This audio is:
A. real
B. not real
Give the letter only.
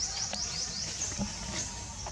A